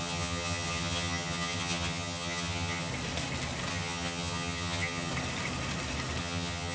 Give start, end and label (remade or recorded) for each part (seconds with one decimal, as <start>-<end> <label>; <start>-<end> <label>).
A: 0.0-2.9 remade; 2.9-3.7 recorded; 3.7-5.1 remade; 5.1-6.2 recorded; 6.2-6.7 remade